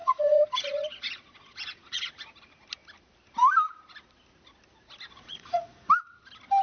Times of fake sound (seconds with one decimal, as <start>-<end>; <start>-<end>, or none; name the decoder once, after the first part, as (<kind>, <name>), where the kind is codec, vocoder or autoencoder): 0.0-2.1 (vocoder, Vocos); 5.1-5.9